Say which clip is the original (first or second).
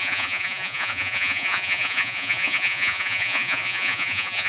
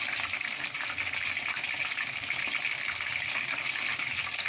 second